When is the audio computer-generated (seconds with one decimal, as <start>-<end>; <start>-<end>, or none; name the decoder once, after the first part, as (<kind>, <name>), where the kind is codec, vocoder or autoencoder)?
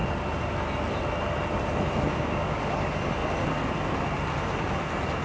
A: 2.1-2.6 (codec, DAC)